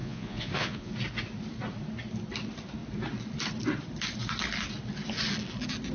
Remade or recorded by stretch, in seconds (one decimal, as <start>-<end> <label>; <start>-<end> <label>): 0.0-0.9 remade; 0.9-5.9 recorded